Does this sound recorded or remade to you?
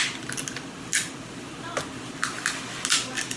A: recorded